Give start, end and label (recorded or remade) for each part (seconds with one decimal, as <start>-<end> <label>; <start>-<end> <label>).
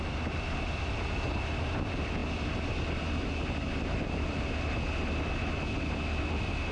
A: 0.0-6.7 recorded